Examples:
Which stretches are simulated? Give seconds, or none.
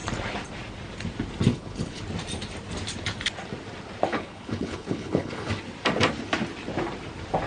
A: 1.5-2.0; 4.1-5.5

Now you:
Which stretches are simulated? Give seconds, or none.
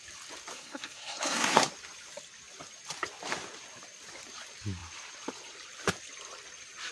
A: 0.5-1.7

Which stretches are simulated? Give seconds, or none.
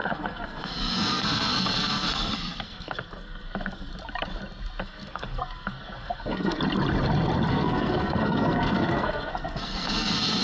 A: 0.0-3.9; 4.8-6.6; 7.5-10.4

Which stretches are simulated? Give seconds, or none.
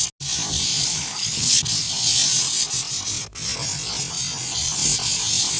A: 0.8-1.6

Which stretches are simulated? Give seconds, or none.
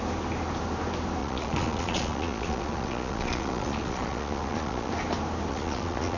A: 1.2-4.9; 5.5-6.2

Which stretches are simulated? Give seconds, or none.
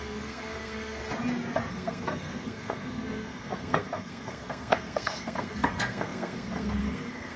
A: 0.0-1.0; 1.7-7.4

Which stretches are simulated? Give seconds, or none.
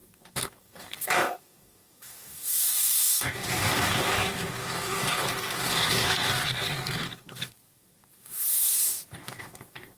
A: 0.0-10.0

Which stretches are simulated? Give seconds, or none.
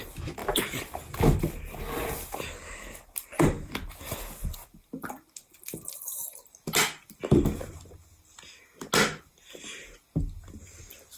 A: none